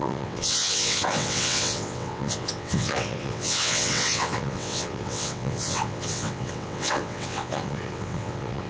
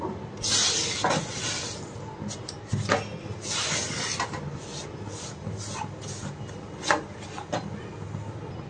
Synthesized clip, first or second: first